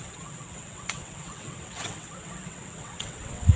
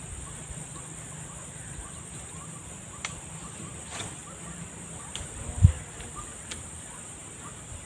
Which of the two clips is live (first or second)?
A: second